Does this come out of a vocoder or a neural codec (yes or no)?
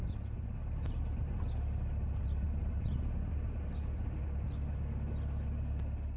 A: no